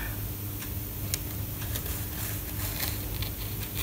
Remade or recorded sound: recorded